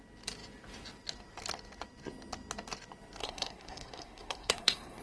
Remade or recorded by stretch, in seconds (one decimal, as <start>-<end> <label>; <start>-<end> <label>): 0.0-3.2 recorded; 3.2-5.0 remade